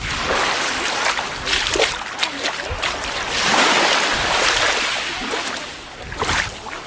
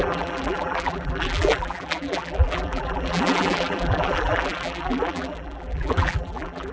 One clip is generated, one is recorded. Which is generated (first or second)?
second